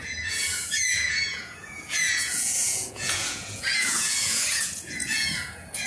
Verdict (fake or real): fake